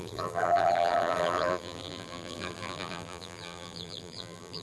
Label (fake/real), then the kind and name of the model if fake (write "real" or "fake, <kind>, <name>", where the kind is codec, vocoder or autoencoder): fake, vocoder, BigVGAN v2